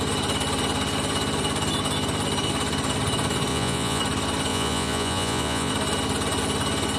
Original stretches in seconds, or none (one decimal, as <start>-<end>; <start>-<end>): 0.0-3.5; 4.0-4.5; 5.7-7.0